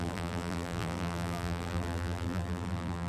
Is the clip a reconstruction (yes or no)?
yes